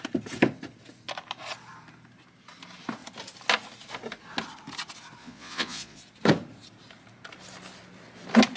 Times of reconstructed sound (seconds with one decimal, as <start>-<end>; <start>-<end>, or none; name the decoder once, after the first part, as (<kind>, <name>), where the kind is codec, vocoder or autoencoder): 5.2-6.0 (vocoder, Vocos)